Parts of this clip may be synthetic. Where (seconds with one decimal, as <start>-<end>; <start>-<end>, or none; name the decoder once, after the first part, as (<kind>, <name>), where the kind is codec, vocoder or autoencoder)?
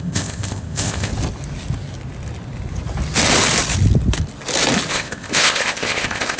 0.0-1.1 (codec, ZipCodec); 4.9-6.4